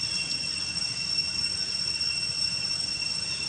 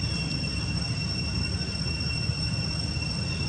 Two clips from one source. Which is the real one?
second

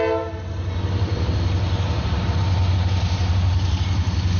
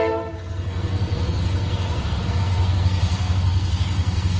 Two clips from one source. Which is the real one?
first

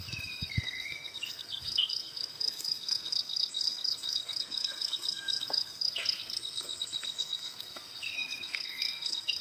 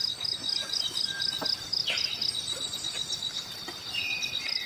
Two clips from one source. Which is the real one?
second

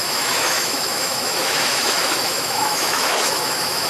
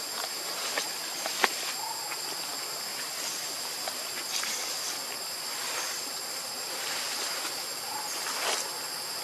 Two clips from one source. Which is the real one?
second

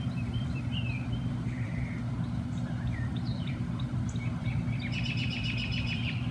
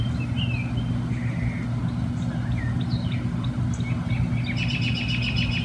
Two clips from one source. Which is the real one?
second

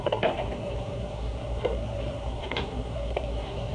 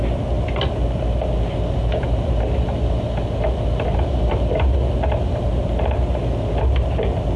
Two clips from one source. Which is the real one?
second